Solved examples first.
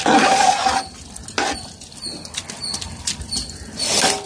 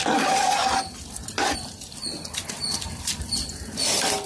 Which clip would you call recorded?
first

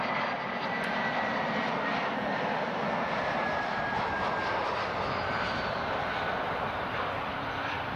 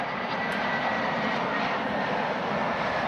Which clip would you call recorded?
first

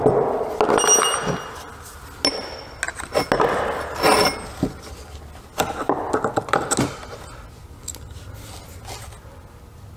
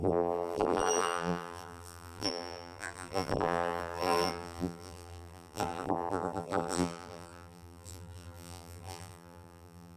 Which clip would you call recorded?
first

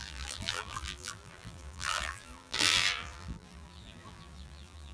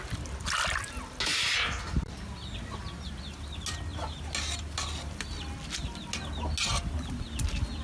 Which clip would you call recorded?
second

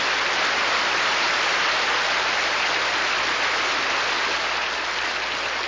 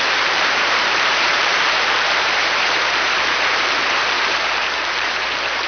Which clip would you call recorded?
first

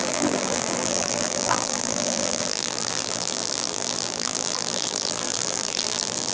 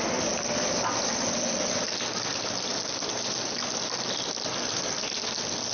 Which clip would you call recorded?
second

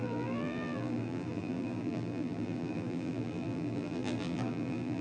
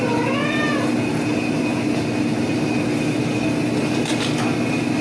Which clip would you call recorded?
second